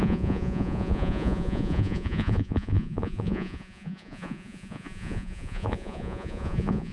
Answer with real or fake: fake